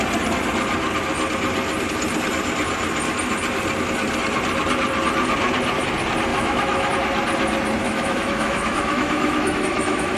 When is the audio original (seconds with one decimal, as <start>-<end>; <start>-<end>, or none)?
0.0-6.3; 6.9-7.8